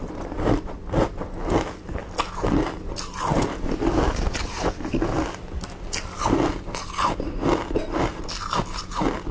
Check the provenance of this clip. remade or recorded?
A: recorded